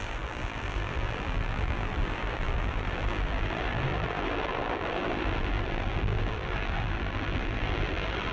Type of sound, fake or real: fake